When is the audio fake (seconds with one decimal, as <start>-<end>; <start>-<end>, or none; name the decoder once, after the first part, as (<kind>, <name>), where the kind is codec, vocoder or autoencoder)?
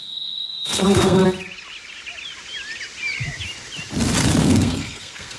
0.0-1.2 (codec, SNAC); 4.4-5.4